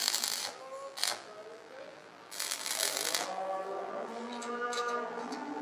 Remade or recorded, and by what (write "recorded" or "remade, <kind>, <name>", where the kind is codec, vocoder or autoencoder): remade, vocoder, BigVGAN v2